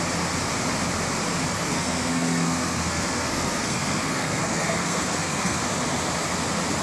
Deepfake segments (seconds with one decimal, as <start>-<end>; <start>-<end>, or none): 1.5-5.6